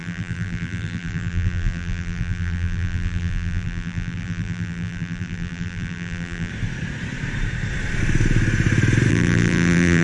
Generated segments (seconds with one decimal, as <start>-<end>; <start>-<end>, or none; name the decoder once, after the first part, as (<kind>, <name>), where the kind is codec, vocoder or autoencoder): 0.0-6.5 (vocoder, BigVGAN v2); 9.1-10.0